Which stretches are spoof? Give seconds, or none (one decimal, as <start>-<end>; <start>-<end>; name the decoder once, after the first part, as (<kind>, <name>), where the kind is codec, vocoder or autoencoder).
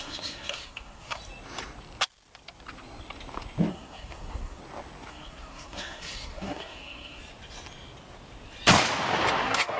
0.0-1.2 (codec, SNAC); 3.7-4.6; 5.1-7.2; 9.4-9.8